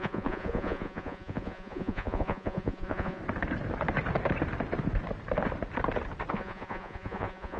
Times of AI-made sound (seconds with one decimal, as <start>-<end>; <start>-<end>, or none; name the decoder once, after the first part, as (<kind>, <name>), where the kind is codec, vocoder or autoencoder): 0.0-3.2 (vocoder, Vocos); 6.3-7.6